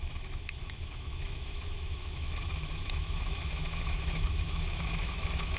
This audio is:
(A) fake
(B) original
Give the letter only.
A